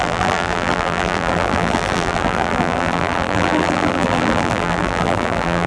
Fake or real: fake